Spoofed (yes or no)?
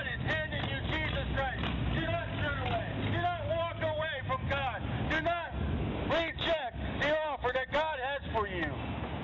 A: no